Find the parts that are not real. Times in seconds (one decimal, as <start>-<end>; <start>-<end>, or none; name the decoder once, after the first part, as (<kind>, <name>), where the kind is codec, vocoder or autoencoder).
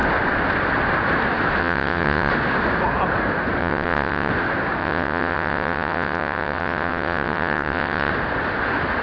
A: 1.6-2.3 (vocoder, WaveNeXt); 3.6-4.3; 4.8-8.1